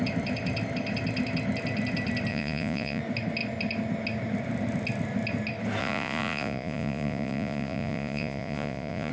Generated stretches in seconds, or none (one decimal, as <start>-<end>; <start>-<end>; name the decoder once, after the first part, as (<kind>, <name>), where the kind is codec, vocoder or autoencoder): 2.3-3.0 (vocoder, Vocos); 5.8-9.1